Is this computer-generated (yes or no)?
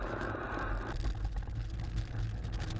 no